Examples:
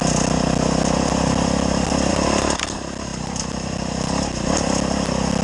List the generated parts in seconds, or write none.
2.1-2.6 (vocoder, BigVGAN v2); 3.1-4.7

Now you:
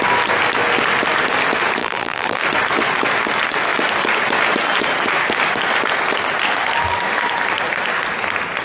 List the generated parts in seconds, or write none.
1.8-2.4 (vocoder, BigVGAN v2)

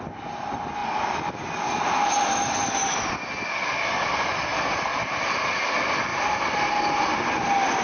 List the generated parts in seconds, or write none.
0.8-3.0 (vocoder, BigVGAN v2); 4.9-5.5; 6.1-6.7

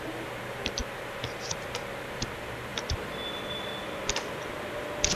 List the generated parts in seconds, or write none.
none

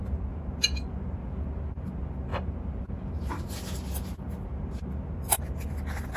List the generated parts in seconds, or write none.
none